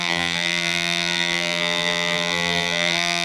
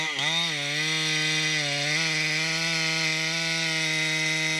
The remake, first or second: first